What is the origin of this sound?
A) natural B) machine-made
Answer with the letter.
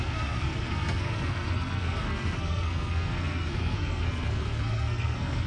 B